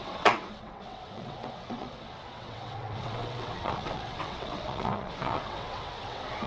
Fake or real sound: fake